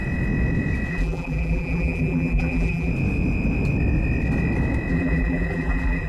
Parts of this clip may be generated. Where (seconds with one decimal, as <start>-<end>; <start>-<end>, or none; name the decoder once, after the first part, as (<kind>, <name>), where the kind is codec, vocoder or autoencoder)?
0.9-2.9 (vocoder, BigVGAN v2); 4.9-6.1